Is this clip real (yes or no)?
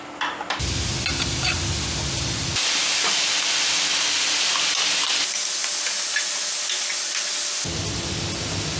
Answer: yes